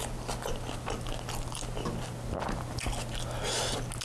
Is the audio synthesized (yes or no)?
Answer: no